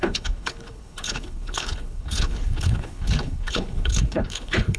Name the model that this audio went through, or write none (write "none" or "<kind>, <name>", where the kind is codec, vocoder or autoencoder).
codec, HILCodec